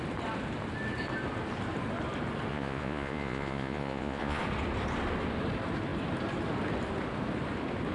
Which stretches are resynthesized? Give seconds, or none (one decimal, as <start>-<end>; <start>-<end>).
2.5-4.4

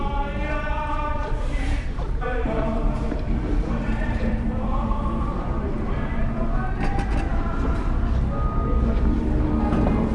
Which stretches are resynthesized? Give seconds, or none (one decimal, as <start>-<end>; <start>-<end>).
1.4-6.2

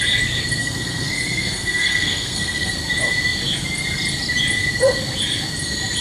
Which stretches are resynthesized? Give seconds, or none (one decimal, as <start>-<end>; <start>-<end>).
0.6-2.7

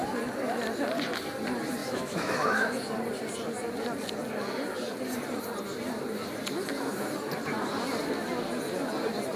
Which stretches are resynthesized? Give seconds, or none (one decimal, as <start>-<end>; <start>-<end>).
1.8-2.7

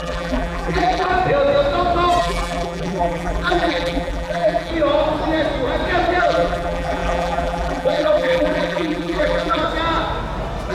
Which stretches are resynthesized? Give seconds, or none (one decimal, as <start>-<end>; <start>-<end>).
0.0-1.1; 2.2-4.7; 6.2-9.6

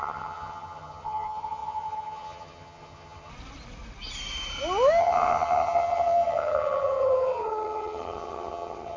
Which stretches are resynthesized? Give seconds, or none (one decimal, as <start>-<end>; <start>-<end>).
0.0-3.3; 5.0-9.0

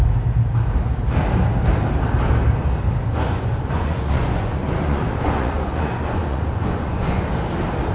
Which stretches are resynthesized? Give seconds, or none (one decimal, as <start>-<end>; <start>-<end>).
3.1-7.2

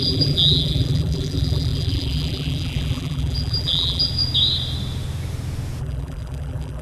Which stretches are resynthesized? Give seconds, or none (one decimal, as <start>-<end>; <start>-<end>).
0.0-4.1; 5.8-6.8